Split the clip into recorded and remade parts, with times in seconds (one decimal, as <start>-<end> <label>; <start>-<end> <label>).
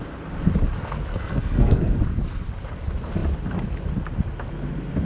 0.0-1.1 recorded; 1.1-2.0 remade; 2.0-5.0 recorded